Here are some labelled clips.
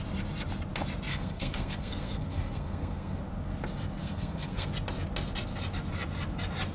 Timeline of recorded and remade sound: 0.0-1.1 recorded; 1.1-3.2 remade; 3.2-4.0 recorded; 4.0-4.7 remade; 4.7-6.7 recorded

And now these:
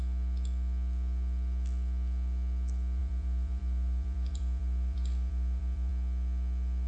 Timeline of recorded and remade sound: 0.0-3.0 recorded; 3.0-5.9 remade; 5.9-6.9 recorded

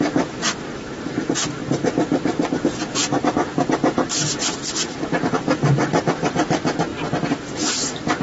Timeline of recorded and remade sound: 0.0-8.2 recorded

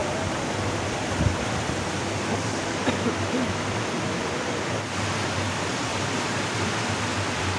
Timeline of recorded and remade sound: 0.0-5.9 recorded; 5.9-7.0 remade; 7.0-7.6 recorded

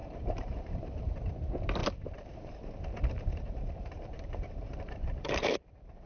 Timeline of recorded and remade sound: 0.0-0.8 remade; 0.8-1.8 recorded; 1.8-5.5 remade; 5.5-6.1 recorded

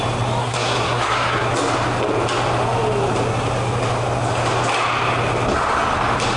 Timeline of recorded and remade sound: 0.0-0.4 recorded; 0.4-1.5 remade; 1.5-6.4 recorded

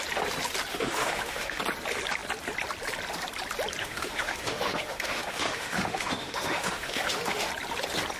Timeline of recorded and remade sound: 0.0-0.7 recorded; 0.7-1.6 remade; 1.6-3.8 recorded; 3.8-7.5 remade; 7.5-8.2 recorded

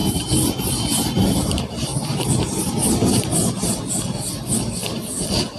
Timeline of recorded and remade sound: 0.0-0.7 recorded; 0.7-1.9 remade; 1.9-5.6 recorded